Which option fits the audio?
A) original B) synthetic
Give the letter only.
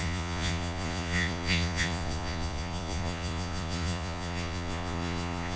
B